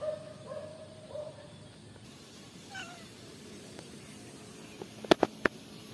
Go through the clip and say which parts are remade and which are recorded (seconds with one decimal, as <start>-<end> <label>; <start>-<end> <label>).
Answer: 0.0-0.7 recorded; 0.7-4.2 remade; 4.2-5.9 recorded